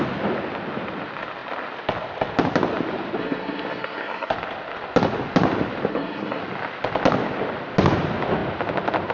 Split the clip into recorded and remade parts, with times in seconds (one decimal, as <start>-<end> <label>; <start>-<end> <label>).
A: 0.0-3.2 recorded; 3.2-4.3 remade; 4.3-5.9 recorded; 5.9-6.4 remade; 6.4-9.1 recorded